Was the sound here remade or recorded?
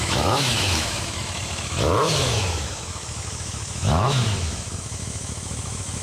remade